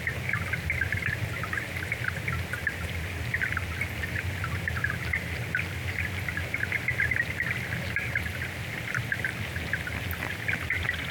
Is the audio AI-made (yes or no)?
no